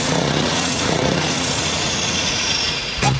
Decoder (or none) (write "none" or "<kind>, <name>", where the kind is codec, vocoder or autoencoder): vocoder, Vocos